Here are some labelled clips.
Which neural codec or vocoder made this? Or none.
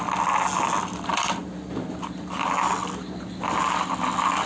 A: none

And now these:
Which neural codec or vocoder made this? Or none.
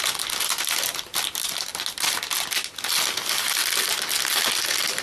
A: none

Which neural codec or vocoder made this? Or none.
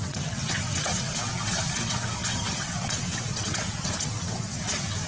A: vocoder, WaveNeXt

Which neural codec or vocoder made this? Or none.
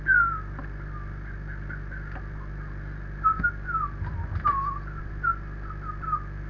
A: none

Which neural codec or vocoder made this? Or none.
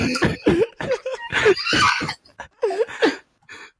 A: none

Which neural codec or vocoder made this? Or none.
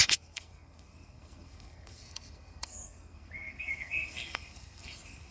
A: codec, SNAC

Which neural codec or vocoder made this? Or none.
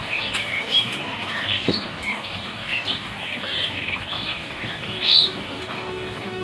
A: codec, DAC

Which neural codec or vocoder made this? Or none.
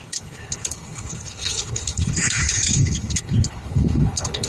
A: codec, HILCodec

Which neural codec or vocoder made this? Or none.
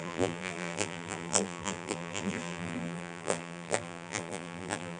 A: vocoder, BigVGAN v2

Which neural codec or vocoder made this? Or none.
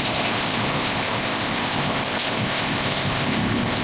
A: codec, ZipCodec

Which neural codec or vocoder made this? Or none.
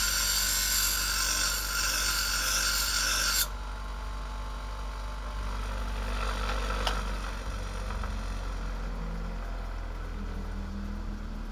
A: none